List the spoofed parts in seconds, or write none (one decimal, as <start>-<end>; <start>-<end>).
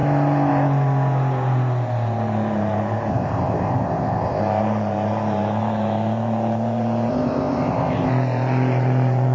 3.1-4.4; 7.1-8.1